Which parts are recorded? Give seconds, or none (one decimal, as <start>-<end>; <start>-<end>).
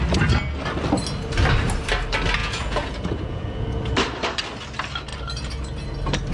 0.0-2.4; 3.9-6.3